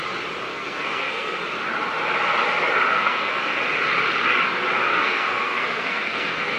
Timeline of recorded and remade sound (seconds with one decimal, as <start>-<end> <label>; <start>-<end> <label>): 0.0-0.5 recorded; 0.5-1.4 remade; 1.4-2.9 recorded; 2.9-3.4 remade; 3.4-4.9 recorded; 4.9-6.6 remade